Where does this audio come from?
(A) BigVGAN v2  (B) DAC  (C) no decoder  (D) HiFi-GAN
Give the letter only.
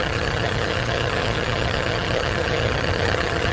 D